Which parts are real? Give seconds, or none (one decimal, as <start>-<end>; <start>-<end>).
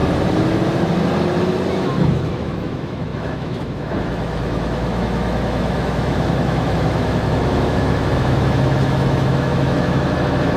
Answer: 0.0-1.7